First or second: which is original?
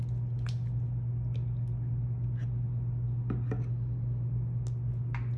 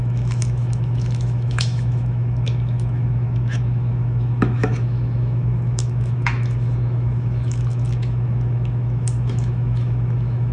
first